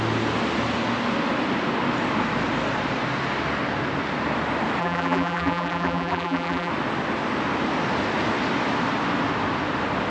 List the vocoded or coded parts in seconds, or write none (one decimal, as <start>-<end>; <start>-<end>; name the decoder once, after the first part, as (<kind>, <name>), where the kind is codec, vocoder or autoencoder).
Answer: 4.8-6.7 (vocoder, BigVGAN v2)